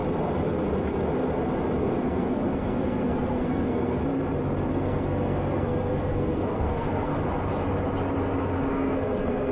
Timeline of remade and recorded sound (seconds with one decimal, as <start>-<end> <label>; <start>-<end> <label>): 0.0-1.8 recorded; 1.8-4.0 remade; 4.0-4.7 recorded; 4.7-7.1 remade; 7.1-8.7 recorded; 8.7-9.5 remade